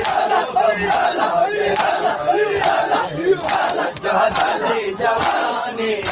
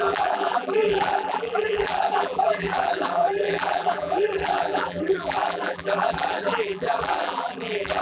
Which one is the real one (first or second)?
first